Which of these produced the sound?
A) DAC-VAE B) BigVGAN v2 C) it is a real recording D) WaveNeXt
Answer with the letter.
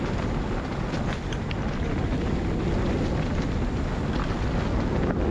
C